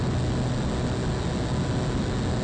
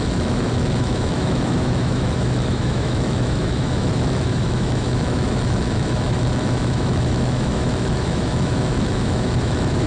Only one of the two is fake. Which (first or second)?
second